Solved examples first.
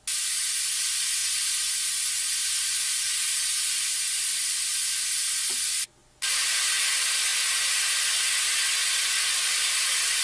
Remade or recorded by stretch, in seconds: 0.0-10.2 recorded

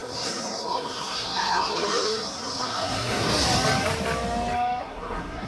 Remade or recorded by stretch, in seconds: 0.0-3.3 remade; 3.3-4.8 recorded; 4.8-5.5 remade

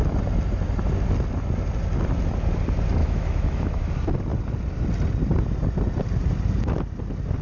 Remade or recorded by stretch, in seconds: 0.0-3.0 recorded; 3.0-3.9 remade; 3.9-7.4 recorded

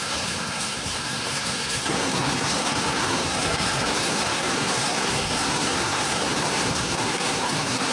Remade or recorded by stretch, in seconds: 0.0-7.9 remade

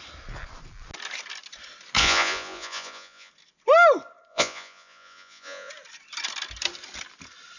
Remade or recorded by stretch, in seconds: 0.0-2.0 recorded; 2.0-3.3 remade; 3.3-4.3 recorded; 4.3-5.7 remade; 5.7-7.6 recorded

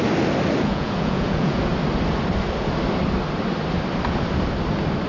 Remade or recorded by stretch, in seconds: 0.0-0.6 recorded; 0.6-1.7 remade; 1.7-5.1 recorded

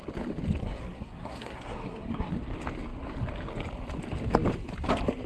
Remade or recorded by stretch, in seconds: 0.0-0.6 recorded; 0.6-2.3 remade; 2.3-5.3 recorded

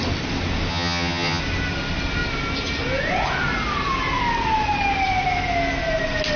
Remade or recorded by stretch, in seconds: 0.0-0.7 recorded; 0.7-1.4 remade; 1.4-6.4 recorded